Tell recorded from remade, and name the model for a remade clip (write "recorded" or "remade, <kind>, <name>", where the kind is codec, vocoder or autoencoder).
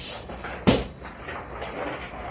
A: recorded